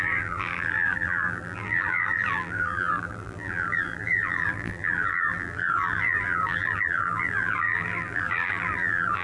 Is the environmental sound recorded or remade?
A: remade